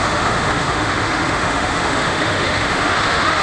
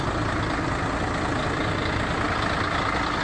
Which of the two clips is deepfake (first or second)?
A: first